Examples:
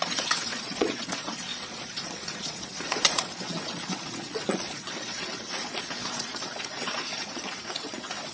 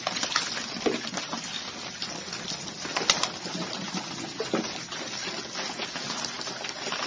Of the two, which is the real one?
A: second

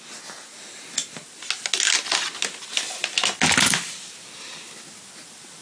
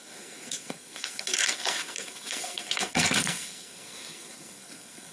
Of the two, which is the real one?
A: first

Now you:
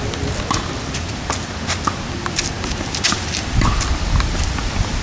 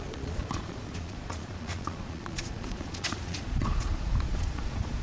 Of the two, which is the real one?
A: first